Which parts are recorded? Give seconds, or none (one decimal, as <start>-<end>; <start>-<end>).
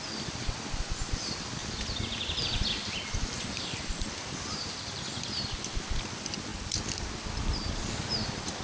1.6-2.4; 6.5-7.9